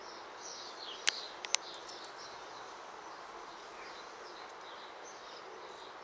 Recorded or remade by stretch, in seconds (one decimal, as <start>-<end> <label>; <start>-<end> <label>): 0.0-6.0 recorded